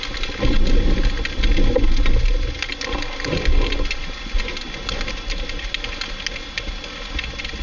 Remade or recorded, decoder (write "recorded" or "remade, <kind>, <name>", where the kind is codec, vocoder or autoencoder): recorded